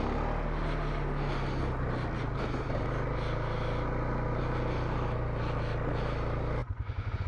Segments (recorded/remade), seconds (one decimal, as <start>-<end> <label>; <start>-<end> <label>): 0.0-6.6 recorded; 6.6-7.3 remade